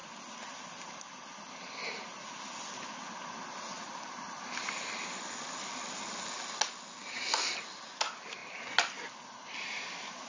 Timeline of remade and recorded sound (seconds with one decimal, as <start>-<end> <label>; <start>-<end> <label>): 0.0-10.3 recorded